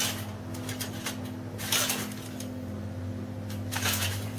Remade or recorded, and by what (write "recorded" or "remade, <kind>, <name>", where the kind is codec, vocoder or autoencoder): recorded